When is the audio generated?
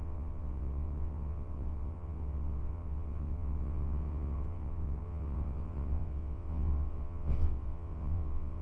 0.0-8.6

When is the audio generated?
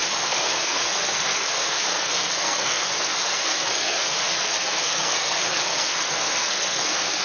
0.0-7.2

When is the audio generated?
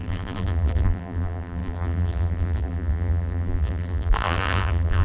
0.0-5.0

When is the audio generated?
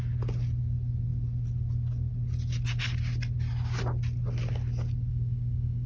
5.1-5.9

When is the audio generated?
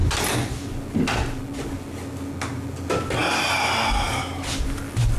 none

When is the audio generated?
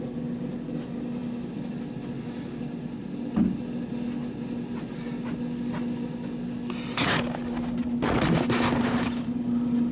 none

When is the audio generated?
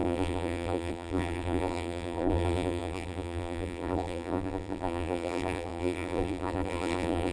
0.0-7.3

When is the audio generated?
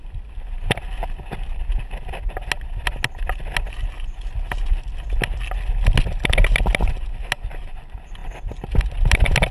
none